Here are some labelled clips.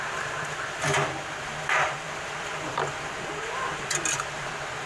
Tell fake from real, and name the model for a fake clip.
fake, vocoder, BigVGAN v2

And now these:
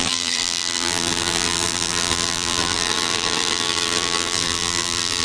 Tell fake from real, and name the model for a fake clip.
fake, vocoder, BigVGAN v2